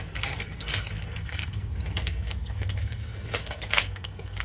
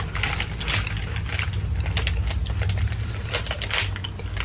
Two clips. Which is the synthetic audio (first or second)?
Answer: first